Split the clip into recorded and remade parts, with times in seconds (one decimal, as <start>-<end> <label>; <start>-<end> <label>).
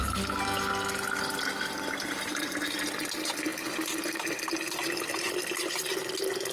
0.0-6.5 recorded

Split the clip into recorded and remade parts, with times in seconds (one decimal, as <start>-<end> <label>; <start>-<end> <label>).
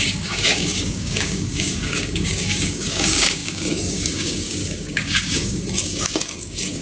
0.0-6.8 remade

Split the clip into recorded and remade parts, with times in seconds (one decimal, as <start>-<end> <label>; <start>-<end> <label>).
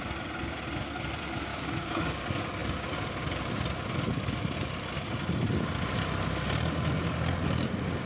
0.0-1.5 recorded; 1.5-2.2 remade; 2.2-8.1 recorded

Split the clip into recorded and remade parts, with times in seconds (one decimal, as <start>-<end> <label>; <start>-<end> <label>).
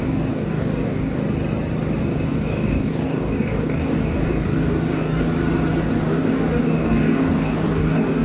0.0-1.2 remade; 1.2-2.0 recorded; 2.0-5.3 remade; 5.3-5.8 recorded; 5.8-8.2 remade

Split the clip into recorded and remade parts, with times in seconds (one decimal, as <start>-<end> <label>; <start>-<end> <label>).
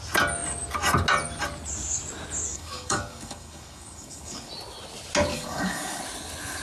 0.0-2.5 recorded; 2.5-4.5 remade; 4.5-5.3 recorded; 5.3-6.0 remade; 6.0-6.6 recorded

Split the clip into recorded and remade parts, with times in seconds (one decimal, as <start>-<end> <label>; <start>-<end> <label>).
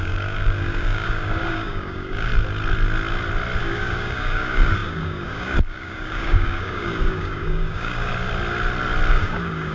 0.0-2.3 remade; 2.3-3.6 recorded; 3.6-8.1 remade; 8.1-9.1 recorded; 9.1-9.7 remade